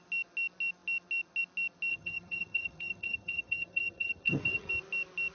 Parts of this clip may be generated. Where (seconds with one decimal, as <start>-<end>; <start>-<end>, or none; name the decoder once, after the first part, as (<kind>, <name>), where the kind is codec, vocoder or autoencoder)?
1.9-4.7 (vocoder, HiFi-GAN)